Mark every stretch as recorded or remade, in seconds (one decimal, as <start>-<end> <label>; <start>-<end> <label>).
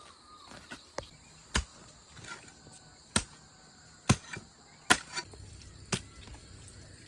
0.0-7.1 recorded